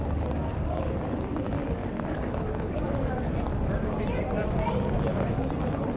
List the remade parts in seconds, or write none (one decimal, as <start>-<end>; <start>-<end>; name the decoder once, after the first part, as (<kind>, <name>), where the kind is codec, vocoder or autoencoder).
0.5-1.2 (codec, DAC); 1.6-3.1